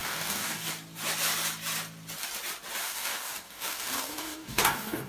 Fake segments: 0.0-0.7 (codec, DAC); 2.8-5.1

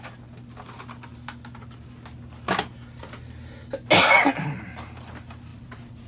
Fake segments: 5.5-6.1 (vocoder, BigVGAN v2)